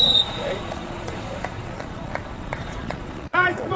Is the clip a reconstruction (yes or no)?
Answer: yes